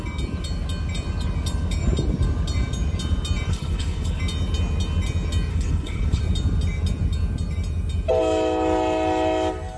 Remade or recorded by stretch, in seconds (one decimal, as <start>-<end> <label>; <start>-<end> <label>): 0.0-3.5 recorded; 3.5-4.2 remade; 4.2-5.5 recorded; 5.5-6.2 remade; 6.2-9.8 recorded